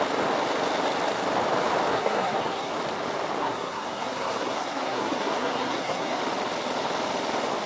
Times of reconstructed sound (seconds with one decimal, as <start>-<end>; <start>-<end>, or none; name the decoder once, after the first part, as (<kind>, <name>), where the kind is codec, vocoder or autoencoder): 1.9-2.7 (codec, SNAC); 3.4-6.2